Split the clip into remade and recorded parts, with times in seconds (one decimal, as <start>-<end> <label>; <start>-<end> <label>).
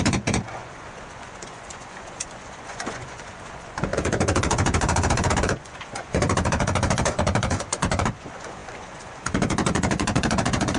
0.0-10.8 remade